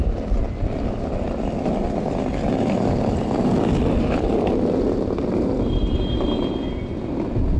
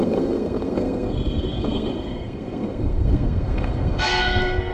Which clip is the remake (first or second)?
second